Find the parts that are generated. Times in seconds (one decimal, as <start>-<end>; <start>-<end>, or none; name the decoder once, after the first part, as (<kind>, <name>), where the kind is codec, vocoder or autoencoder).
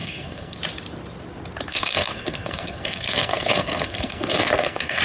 0.0-0.6 (codec, SNAC); 1.7-5.0